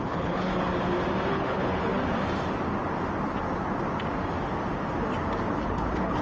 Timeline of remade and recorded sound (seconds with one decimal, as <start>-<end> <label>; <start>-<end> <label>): 0.0-0.5 remade; 0.5-1.3 recorded; 1.3-1.8 remade; 1.8-5.5 recorded; 5.5-6.2 remade